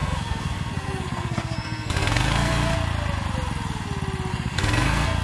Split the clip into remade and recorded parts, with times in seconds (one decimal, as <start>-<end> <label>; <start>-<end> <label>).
0.0-2.7 remade; 2.7-4.3 recorded; 4.3-5.2 remade